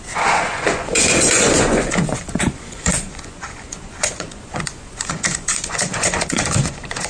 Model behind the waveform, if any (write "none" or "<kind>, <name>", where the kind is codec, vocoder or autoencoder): vocoder, Vocos